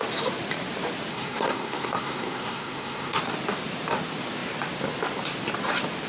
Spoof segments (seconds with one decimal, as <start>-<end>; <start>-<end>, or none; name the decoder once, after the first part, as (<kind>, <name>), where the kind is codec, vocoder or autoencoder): 1.1-3.2 (codec, SNAC)